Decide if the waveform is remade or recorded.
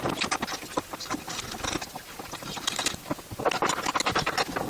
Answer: recorded